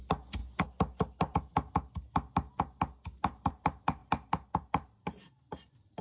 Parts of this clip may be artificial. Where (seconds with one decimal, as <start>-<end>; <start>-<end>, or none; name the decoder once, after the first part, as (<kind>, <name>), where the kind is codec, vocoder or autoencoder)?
none